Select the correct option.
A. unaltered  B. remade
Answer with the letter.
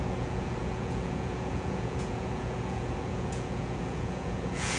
B